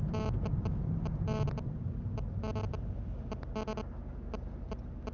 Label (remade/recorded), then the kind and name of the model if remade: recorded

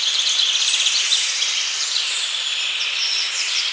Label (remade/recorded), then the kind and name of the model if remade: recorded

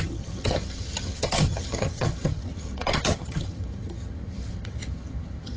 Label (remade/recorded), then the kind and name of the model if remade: remade, vocoder, HiFi-GAN